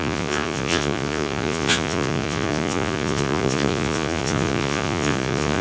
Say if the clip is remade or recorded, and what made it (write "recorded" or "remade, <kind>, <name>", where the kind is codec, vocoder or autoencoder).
remade, vocoder, Vocos